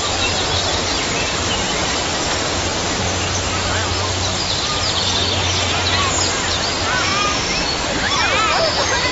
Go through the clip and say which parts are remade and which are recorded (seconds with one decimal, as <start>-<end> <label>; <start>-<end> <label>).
0.0-9.1 recorded